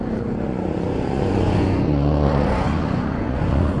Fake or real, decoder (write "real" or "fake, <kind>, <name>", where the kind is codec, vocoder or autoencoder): fake, vocoder, Vocos